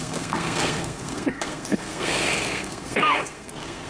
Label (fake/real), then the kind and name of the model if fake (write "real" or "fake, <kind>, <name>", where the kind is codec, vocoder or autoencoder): fake, codec, SNAC